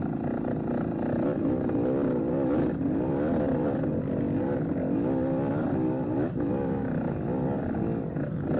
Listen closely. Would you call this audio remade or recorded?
recorded